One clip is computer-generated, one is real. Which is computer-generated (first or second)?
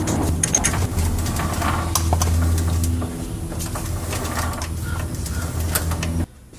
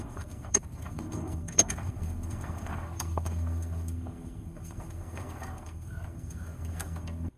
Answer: second